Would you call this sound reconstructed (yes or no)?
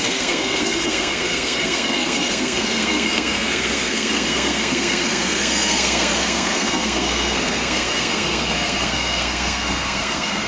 yes